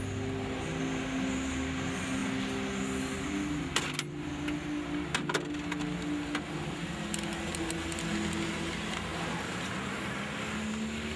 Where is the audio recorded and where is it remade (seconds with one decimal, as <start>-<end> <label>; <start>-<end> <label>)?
0.0-11.2 recorded

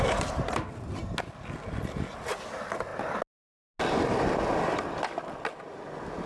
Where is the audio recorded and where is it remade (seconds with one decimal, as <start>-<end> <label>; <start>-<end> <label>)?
0.0-6.3 recorded

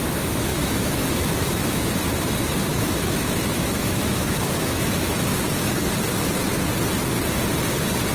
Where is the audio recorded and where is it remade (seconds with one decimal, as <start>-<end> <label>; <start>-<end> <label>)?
0.0-0.5 recorded; 0.5-1.9 remade; 1.9-2.7 recorded; 2.7-5.1 remade; 5.1-8.1 recorded

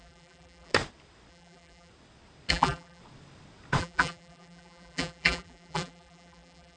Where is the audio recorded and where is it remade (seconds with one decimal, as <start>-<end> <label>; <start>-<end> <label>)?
0.0-0.7 remade; 0.7-1.3 recorded; 1.3-1.9 remade; 1.9-2.5 recorded; 2.5-3.0 remade; 3.0-3.8 recorded; 3.8-6.8 remade